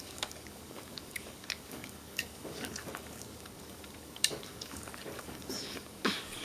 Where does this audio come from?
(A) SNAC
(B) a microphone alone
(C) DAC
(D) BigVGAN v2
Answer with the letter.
C